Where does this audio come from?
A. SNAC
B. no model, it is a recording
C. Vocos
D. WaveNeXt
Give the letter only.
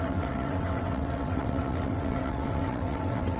D